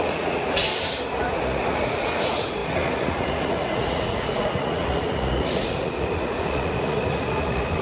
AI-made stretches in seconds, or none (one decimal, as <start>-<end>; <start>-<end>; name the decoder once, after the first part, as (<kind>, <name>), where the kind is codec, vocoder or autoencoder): 0.0-0.7 (vocoder, Vocos); 1.3-7.8